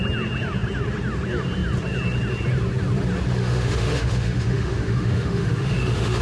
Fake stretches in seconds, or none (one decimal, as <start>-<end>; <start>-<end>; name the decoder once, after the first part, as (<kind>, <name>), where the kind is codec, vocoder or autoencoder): 3.4-6.2 (autoencoder, DAC-VAE)